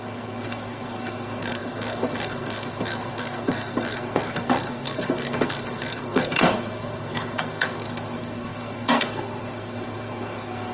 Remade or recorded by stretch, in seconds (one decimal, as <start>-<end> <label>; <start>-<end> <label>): 0.0-10.7 remade

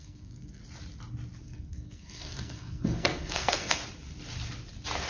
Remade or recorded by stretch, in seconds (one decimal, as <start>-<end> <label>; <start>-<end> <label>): 0.0-0.6 remade; 0.6-1.4 recorded; 1.4-3.8 remade; 3.8-5.1 recorded

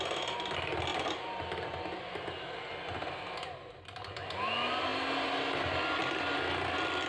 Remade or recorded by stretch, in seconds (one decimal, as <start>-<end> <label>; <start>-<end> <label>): 0.0-7.1 recorded

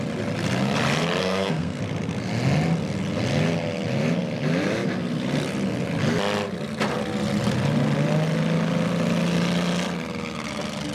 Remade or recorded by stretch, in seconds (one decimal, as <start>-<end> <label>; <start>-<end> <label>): 0.0-1.2 recorded; 1.2-1.8 remade; 1.8-10.9 recorded